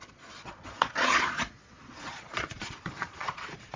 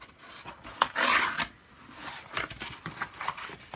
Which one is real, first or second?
second